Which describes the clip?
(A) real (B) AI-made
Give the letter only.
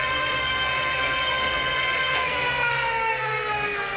B